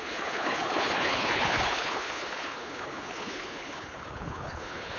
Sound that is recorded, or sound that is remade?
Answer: remade